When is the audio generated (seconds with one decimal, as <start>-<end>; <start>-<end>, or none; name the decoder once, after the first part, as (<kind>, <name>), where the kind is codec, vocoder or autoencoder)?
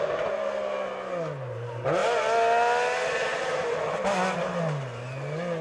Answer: none